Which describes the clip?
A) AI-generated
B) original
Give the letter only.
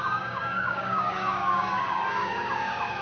A